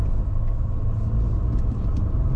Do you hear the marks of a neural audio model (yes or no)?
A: no